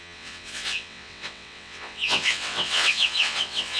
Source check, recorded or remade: remade